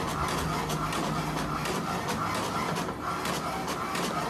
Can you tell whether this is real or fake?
real